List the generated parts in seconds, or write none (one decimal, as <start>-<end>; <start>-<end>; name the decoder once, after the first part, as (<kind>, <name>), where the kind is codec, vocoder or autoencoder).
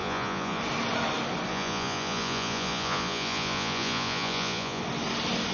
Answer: 0.0-0.6 (vocoder, Vocos); 1.5-4.8